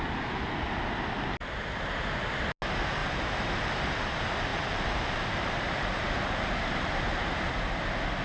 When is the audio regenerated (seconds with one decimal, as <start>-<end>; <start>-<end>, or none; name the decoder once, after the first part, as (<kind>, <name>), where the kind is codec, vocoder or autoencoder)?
3.0-4.1 (vocoder, BigVGAN v2); 4.5-6.5